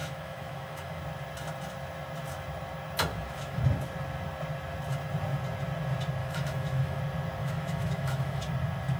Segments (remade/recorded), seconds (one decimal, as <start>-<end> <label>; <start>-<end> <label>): 0.0-1.0 remade; 1.0-3.1 recorded; 3.1-3.6 remade; 3.6-6.2 recorded; 6.2-7.0 remade; 7.0-7.4 recorded; 7.4-8.5 remade; 8.5-9.0 recorded